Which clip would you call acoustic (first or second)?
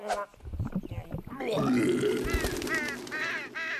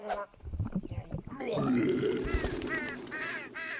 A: first